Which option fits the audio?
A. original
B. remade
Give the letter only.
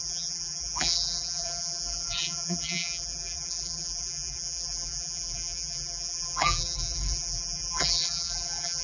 B